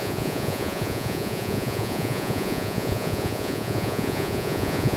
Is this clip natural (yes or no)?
no